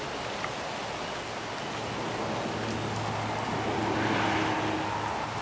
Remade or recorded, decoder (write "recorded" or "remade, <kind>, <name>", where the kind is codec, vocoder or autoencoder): recorded